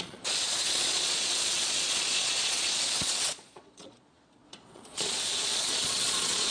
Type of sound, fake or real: fake